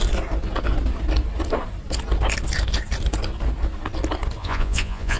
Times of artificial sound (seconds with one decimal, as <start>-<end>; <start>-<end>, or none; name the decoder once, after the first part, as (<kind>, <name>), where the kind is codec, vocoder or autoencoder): 4.4-5.2 (vocoder, Vocos)